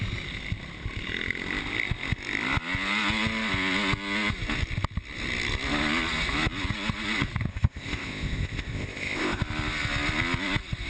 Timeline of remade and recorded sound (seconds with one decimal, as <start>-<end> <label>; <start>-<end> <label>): 0.0-7.5 recorded; 7.5-9.4 remade; 9.4-10.9 recorded